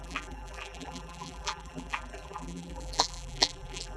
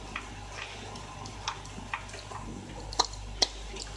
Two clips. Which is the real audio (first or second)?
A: second